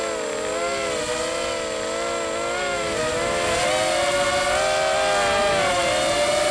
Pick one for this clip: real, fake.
real